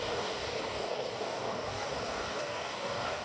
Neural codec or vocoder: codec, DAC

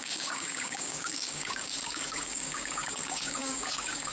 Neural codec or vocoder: codec, DAC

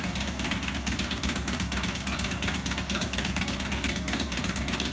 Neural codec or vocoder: codec, DAC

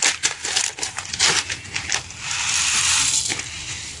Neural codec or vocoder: none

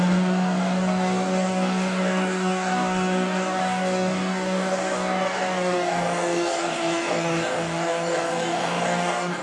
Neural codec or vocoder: codec, DAC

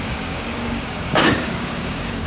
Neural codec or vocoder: codec, DAC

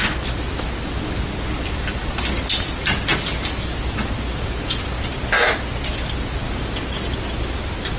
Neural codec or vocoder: none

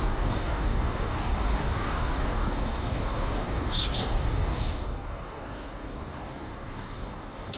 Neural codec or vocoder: codec, DAC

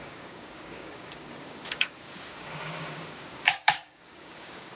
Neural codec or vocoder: codec, DAC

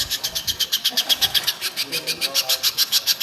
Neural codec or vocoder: codec, DAC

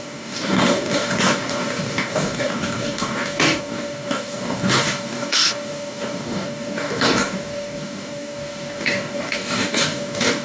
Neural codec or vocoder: codec, DAC